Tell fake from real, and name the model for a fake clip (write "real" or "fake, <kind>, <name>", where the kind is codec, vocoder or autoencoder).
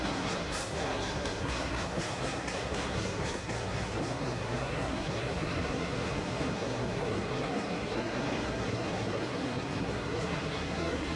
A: fake, codec, SNAC